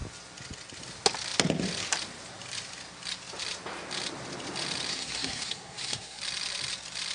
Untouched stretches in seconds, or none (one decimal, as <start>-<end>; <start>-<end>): 0.0-4.9; 6.2-7.1